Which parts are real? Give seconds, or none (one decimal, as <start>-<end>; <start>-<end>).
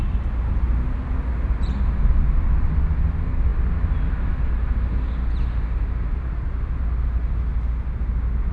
0.0-8.5